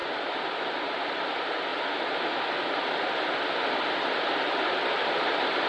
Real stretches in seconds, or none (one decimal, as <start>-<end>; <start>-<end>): 0.0-0.9; 1.7-3.8